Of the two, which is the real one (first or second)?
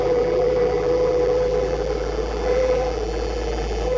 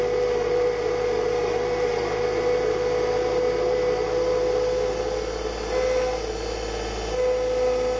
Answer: second